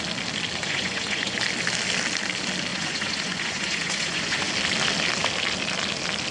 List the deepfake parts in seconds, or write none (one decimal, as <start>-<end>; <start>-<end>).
0.6-1.4; 2.7-4.5